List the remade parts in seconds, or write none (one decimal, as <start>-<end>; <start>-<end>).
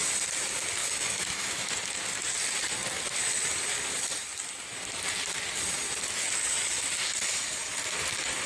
0.8-1.7